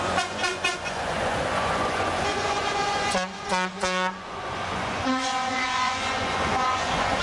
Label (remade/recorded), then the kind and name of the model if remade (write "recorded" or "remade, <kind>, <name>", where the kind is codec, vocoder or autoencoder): remade, vocoder, Vocos